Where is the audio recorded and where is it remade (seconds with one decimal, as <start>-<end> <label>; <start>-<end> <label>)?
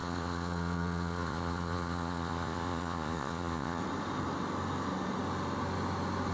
0.0-3.8 remade; 3.8-6.3 recorded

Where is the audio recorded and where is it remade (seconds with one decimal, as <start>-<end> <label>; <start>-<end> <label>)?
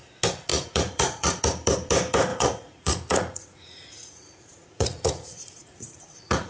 0.0-0.5 recorded; 0.5-1.4 remade; 1.4-2.3 recorded; 2.3-6.5 remade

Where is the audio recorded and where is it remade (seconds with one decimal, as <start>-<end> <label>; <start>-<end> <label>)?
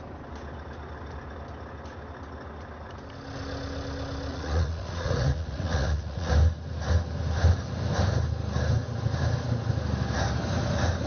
0.0-4.3 recorded; 4.3-6.3 remade; 6.3-11.1 recorded